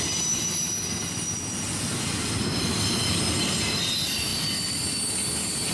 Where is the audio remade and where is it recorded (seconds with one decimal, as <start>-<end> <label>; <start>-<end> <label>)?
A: 0.0-5.7 recorded